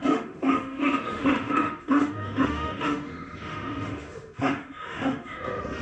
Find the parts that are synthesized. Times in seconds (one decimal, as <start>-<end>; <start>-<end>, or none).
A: 0.0-5.8